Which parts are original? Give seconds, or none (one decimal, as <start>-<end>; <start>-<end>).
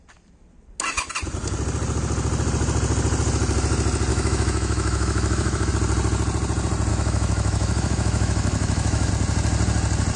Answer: 0.0-4.1; 5.7-6.9; 9.1-10.2